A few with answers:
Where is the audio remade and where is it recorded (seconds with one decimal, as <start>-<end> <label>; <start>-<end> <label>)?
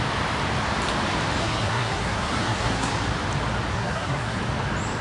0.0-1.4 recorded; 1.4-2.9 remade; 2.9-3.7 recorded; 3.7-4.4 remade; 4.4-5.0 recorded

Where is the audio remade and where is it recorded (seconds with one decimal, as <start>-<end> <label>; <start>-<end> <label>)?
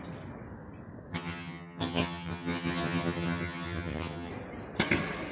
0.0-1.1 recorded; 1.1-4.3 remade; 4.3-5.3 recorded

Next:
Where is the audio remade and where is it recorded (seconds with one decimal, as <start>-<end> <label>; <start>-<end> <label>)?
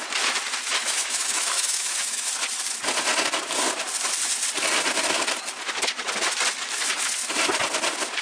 0.0-0.8 recorded; 0.8-2.3 remade; 2.3-8.2 recorded